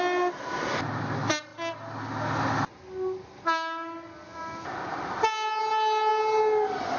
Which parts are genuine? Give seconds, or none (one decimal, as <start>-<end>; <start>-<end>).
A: 0.0-7.0